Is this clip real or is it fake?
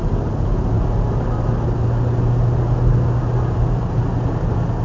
real